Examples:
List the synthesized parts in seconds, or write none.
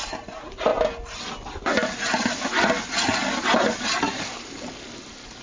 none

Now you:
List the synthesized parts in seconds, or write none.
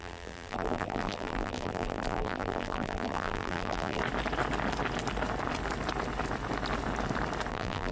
0.0-4.0 (vocoder, BigVGAN v2); 7.5-7.9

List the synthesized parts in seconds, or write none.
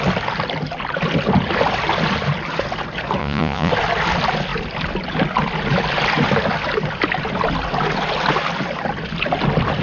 3.2-3.7 (vocoder, Vocos)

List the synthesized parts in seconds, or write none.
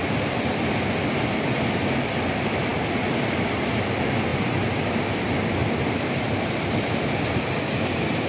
none